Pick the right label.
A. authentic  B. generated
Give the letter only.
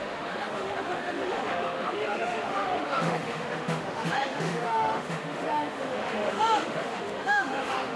B